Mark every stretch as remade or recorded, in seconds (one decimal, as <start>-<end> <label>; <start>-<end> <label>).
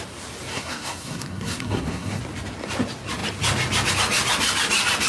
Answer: 0.0-0.5 recorded; 0.5-2.2 remade; 2.2-5.1 recorded